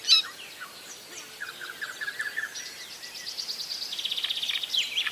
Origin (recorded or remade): recorded